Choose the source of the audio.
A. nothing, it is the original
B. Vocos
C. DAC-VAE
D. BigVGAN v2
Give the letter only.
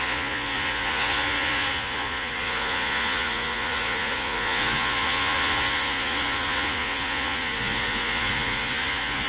B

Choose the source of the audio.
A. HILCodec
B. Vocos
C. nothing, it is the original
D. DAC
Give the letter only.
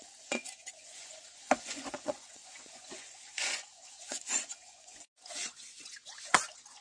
B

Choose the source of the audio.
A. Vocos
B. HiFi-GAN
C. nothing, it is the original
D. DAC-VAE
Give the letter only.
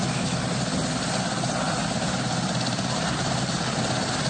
C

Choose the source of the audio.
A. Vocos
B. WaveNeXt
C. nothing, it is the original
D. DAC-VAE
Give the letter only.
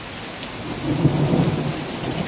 C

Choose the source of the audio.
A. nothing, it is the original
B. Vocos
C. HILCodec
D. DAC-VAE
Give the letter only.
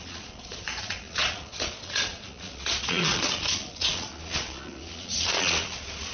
B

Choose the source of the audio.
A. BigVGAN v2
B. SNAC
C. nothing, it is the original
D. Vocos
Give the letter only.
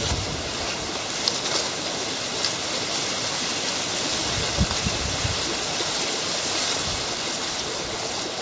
C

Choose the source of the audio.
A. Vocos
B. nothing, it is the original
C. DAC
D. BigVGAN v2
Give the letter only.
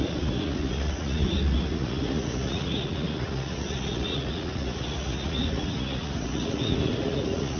A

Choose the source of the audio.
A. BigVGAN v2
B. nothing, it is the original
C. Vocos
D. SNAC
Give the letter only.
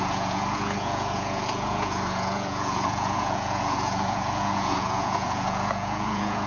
C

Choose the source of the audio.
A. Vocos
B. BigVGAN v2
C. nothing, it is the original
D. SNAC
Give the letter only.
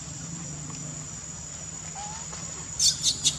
C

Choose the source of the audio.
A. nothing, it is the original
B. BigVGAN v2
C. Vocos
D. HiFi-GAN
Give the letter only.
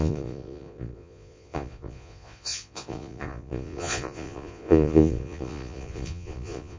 C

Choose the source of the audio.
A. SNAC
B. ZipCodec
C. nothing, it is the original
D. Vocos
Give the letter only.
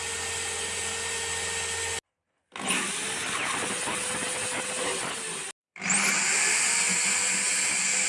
C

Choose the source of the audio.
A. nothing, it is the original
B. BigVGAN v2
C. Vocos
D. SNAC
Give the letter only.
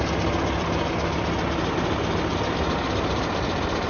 A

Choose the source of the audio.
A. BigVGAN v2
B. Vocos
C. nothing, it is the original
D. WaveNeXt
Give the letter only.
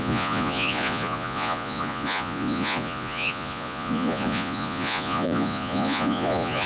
B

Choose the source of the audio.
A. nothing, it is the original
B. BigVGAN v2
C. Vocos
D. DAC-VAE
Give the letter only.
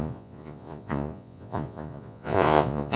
C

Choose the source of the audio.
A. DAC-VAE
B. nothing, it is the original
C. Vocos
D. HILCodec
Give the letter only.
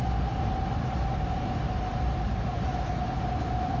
B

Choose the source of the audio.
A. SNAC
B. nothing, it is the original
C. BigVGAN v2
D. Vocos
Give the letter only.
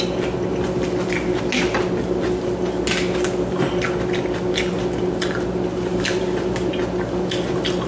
B